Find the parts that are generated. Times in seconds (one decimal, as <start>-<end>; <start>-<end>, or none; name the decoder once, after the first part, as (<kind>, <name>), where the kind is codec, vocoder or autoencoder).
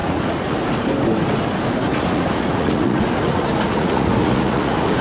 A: 0.0-0.6 (vocoder, Vocos); 1.9-5.0